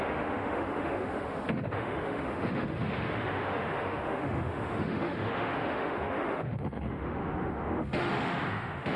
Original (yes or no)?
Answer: no